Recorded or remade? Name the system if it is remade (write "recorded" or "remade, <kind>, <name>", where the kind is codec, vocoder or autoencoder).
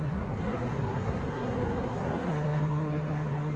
remade, codec, SNAC